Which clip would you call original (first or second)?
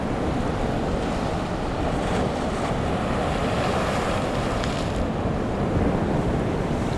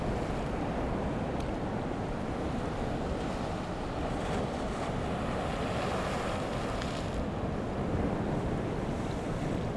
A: second